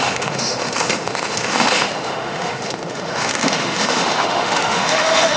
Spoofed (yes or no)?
yes